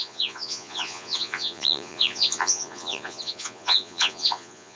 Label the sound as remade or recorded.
remade